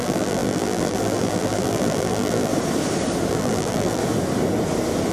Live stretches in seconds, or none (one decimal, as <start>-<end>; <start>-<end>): 2.5-3.3; 4.0-5.1